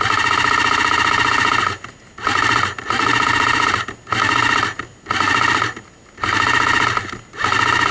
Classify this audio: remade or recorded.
recorded